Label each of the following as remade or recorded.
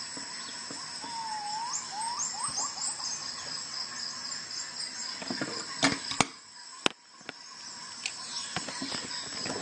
recorded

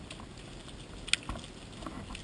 recorded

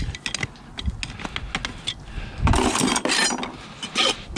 recorded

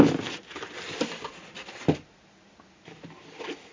recorded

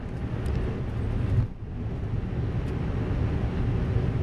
recorded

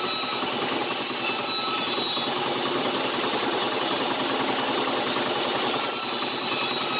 recorded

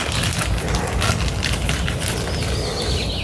recorded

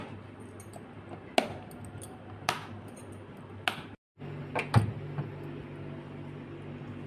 recorded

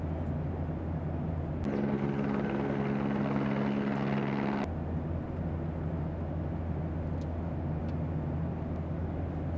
recorded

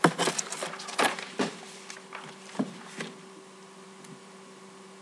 recorded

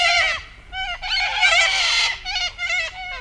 recorded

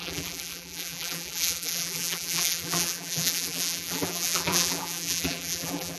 remade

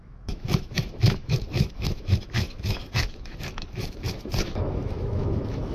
remade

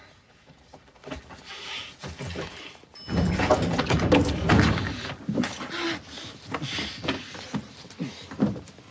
recorded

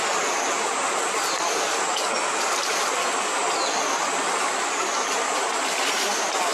recorded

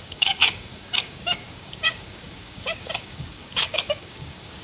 remade